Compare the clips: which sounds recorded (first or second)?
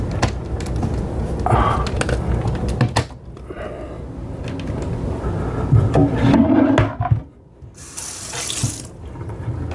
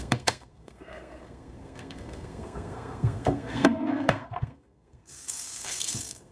first